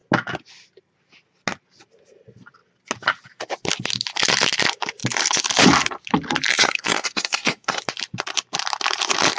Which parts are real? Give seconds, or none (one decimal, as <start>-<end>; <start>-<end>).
0.0-6.5; 7.8-9.4